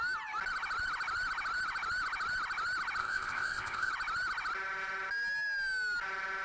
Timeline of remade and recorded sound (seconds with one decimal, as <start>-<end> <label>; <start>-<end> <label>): 0.0-3.0 recorded; 3.0-3.9 remade; 3.9-6.4 recorded